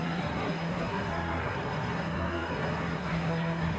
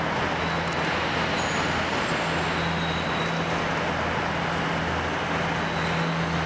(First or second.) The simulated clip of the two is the first